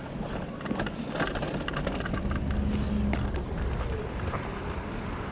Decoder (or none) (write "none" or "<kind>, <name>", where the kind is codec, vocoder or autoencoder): none